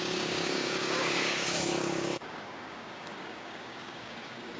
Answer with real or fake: fake